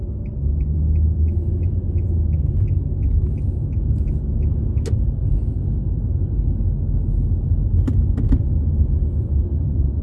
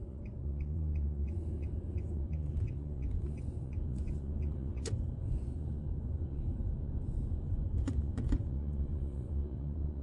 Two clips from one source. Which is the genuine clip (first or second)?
first